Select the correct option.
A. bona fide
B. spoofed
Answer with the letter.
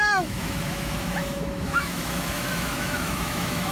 B